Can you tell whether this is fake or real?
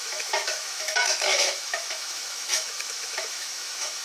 fake